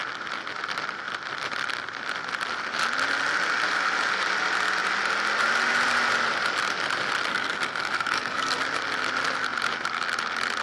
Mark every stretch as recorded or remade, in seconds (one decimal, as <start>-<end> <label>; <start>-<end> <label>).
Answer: 0.0-7.3 recorded; 7.3-8.6 remade; 8.6-10.6 recorded